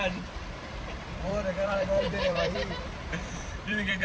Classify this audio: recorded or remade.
remade